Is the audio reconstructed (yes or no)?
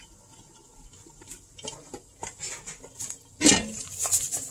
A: no